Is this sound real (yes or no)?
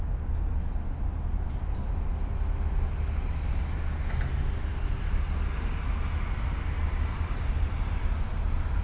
yes